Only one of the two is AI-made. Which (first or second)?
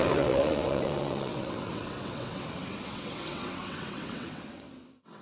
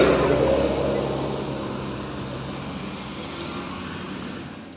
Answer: first